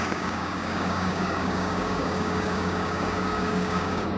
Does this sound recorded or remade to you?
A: remade